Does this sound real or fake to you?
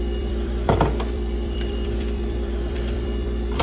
fake